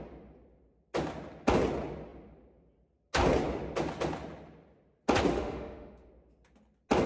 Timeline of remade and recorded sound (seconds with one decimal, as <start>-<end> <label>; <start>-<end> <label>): 0.0-5.3 recorded; 5.3-6.1 remade; 6.1-7.1 recorded